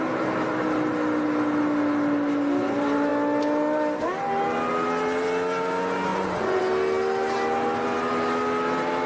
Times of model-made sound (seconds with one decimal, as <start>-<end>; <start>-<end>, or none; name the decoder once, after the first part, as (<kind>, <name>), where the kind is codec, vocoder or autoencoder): 6.1-6.6 (vocoder, Vocos)